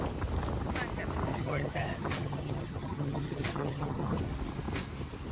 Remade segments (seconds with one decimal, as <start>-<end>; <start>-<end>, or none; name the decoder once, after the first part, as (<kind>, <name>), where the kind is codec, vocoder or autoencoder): 1.3-4.2 (vocoder, HiFi-GAN)